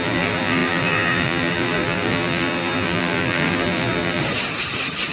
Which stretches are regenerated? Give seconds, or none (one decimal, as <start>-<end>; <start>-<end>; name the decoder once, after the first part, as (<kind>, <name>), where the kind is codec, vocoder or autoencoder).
0.0-4.2 (vocoder, BigVGAN v2)